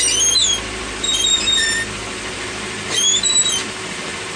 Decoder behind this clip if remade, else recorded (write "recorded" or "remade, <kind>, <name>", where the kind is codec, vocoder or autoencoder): recorded